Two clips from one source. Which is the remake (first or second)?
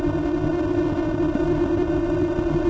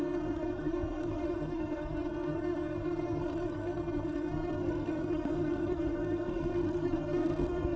second